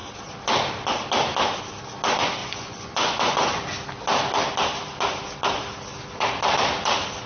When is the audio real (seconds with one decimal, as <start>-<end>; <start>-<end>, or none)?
0.0-2.4; 3.6-7.3